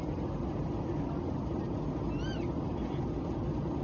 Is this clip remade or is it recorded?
recorded